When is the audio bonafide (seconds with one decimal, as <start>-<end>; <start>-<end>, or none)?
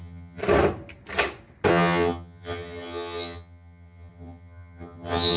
0.4-1.7